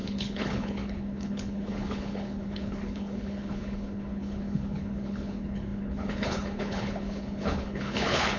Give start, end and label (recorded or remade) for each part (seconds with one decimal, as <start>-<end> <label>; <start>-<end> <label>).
0.0-8.4 remade